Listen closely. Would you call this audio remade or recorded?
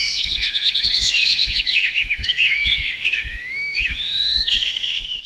remade